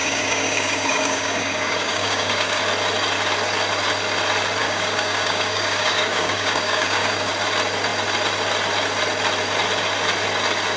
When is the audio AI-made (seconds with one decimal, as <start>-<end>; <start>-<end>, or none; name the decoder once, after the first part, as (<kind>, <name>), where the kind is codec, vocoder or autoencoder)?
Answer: 0.0-2.6 (codec, DAC); 4.6-7.3

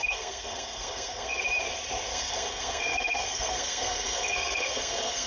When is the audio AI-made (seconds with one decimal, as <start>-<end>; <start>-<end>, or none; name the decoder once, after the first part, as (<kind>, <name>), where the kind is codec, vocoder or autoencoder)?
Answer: 0.0-1.4 (codec, SNAC); 2.1-5.3

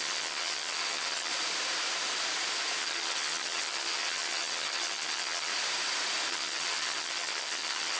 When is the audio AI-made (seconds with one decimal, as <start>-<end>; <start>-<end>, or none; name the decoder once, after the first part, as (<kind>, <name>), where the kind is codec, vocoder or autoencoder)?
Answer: 0.0-1.3 (vocoder, HiFi-GAN); 2.8-5.5; 6.3-8.0

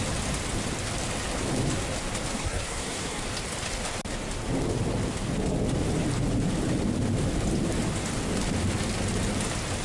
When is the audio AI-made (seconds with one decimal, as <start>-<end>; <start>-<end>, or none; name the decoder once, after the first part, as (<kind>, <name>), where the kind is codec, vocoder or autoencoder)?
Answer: 2.3-3.2 (codec, SNAC)

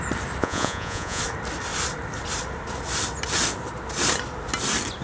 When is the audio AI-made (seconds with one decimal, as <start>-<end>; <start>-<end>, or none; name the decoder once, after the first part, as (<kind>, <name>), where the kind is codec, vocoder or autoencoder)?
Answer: 0.4-1.2 (vocoder, Vocos)

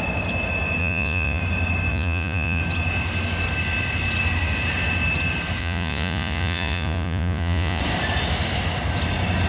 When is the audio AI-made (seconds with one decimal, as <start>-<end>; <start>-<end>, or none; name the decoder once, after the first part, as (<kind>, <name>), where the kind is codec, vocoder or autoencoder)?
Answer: 0.8-1.4 (vocoder, Vocos); 1.9-2.6; 5.6-7.8

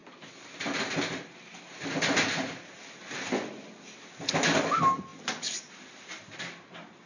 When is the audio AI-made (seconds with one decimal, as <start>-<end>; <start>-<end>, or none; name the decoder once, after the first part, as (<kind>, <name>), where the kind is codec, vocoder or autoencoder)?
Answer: none

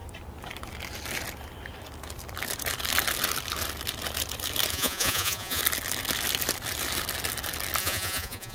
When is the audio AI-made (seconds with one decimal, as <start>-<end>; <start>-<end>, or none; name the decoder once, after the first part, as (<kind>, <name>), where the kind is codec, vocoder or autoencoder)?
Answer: 4.7-5.6 (vocoder, Vocos); 7.8-8.5